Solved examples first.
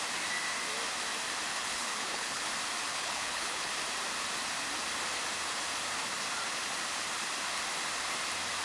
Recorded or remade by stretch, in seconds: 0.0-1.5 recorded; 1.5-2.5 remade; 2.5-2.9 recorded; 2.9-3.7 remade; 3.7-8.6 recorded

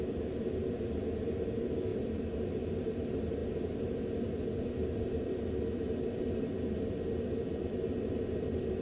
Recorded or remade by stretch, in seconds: 0.0-8.8 recorded

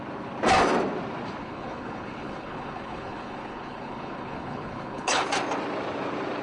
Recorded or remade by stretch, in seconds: 0.0-1.4 recorded; 1.4-5.2 remade; 5.2-6.4 recorded

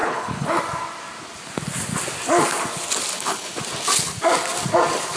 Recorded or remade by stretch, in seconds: 0.0-0.6 remade; 0.6-3.1 recorded; 3.1-3.6 remade; 3.6-5.2 recorded

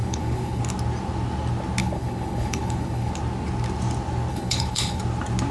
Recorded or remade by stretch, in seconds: 0.0-0.6 remade; 0.6-1.8 recorded; 1.8-3.1 remade; 3.1-4.3 recorded; 4.3-5.0 remade; 5.0-5.5 recorded